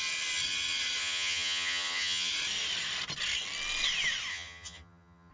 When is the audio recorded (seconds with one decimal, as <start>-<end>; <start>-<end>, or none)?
0.0-1.0; 2.3-4.3